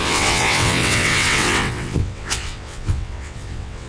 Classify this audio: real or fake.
fake